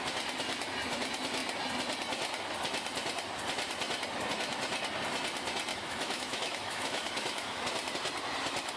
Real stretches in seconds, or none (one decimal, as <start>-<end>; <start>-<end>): 0.0-5.7; 7.6-8.8